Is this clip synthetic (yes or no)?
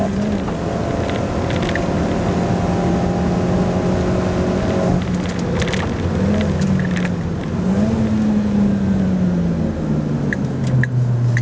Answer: no